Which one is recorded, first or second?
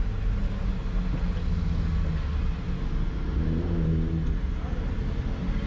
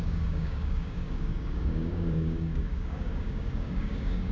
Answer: first